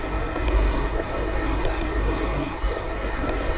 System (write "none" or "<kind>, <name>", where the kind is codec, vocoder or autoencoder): codec, SNAC